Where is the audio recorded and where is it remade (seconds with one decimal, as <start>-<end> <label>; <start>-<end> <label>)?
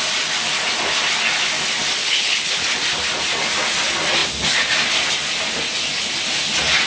0.0-2.0 recorded; 2.0-2.6 remade; 2.6-6.9 recorded